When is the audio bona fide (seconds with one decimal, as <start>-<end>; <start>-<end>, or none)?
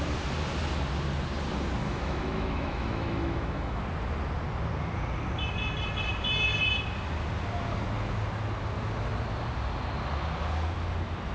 0.0-1.8; 3.8-11.3